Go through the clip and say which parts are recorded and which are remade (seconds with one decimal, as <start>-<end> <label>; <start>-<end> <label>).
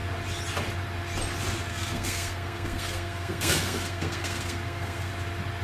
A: 0.0-1.7 recorded; 1.7-5.1 remade; 5.1-5.6 recorded